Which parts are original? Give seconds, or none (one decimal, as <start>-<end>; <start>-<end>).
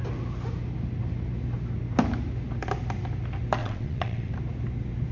0.0-3.6; 4.3-5.1